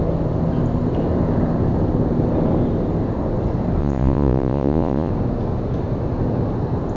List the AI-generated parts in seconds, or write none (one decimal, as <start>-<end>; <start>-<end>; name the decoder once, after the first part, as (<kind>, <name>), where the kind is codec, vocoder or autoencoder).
3.8-5.1 (vocoder, Vocos)